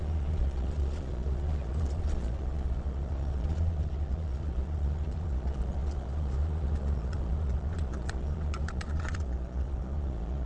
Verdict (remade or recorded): remade